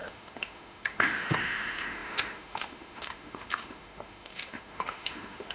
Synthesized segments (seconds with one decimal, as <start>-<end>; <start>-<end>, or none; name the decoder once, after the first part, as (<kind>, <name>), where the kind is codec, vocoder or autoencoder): 0.0-5.5 (autoencoder, DAC-VAE)